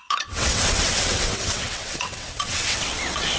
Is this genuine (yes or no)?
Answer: no